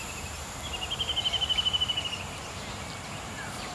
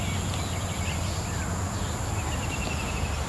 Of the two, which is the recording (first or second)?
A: second